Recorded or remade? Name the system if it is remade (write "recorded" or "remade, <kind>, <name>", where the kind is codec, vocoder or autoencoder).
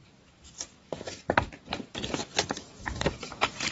recorded